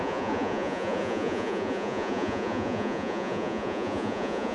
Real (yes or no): no